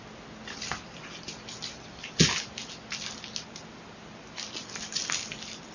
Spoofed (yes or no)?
no